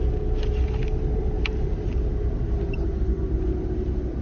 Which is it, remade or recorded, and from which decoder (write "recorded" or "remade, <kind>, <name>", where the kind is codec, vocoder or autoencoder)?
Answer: recorded